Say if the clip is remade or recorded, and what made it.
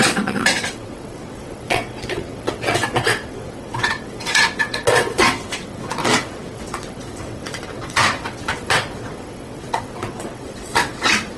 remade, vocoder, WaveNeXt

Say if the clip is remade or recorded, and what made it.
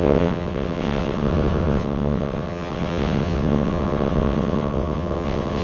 remade, vocoder, WaveNeXt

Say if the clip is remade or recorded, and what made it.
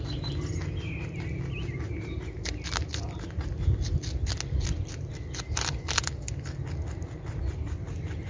recorded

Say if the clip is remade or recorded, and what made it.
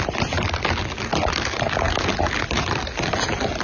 recorded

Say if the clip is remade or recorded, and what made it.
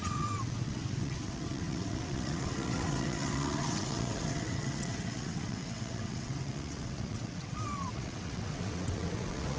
remade, vocoder, WaveNeXt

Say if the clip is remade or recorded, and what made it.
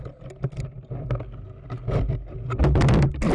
recorded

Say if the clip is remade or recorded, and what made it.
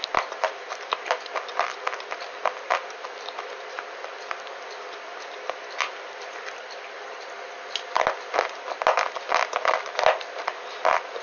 recorded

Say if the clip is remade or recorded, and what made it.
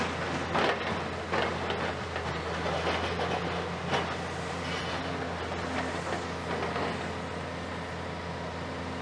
recorded